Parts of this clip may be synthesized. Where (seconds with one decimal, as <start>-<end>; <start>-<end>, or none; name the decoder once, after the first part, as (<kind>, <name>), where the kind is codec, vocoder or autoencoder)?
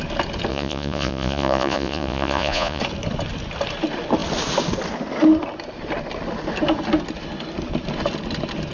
0.5-2.8 (vocoder, Vocos)